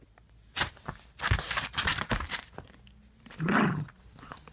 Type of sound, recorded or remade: recorded